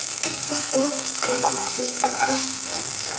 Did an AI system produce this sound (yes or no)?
yes